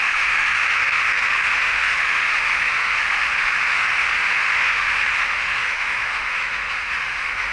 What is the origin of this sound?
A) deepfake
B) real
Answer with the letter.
A